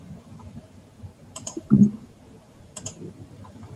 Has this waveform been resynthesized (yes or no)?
yes